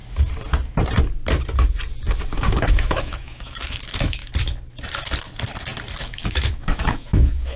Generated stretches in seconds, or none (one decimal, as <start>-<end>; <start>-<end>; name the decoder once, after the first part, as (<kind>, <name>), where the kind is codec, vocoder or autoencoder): 2.7-4.2 (autoencoder, DAC-VAE); 6.0-7.6